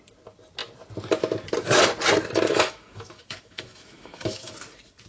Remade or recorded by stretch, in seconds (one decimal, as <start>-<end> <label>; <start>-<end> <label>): 0.0-2.5 recorded; 2.5-4.5 remade; 4.5-5.1 recorded